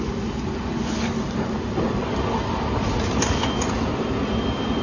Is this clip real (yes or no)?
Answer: no